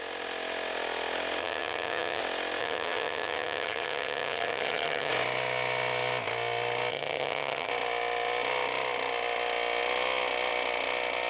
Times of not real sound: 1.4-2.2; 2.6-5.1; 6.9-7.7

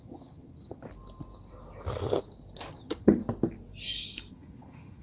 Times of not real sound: 0.0-0.9; 2.7-3.2; 4.3-5.0

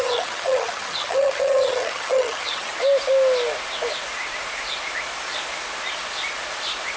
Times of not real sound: 0.0-2.7

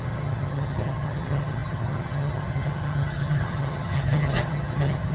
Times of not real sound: 0.0-5.1

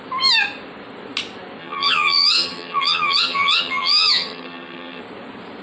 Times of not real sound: 1.6-5.0